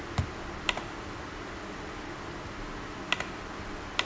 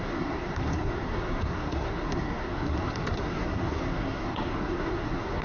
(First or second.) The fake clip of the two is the second